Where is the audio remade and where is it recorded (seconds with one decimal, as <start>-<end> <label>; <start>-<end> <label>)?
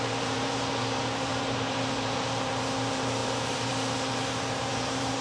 0.0-5.2 remade